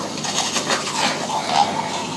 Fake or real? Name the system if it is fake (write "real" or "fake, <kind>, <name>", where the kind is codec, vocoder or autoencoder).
real